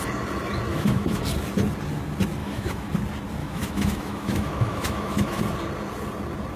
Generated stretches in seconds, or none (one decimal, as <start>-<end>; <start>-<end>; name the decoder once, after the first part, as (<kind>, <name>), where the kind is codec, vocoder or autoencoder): 0.7-1.2 (autoencoder, DAC-VAE); 2.4-2.9; 3.4-5.4